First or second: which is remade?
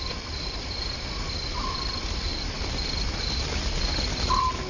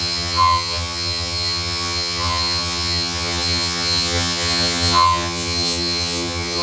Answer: second